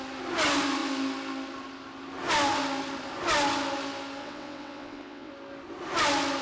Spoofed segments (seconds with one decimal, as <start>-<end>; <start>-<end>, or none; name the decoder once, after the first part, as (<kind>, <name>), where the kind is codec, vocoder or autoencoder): 4.2-5.3 (vocoder, WaveNeXt)